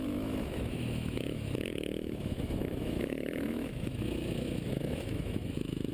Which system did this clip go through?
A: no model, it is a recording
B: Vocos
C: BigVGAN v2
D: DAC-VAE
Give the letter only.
D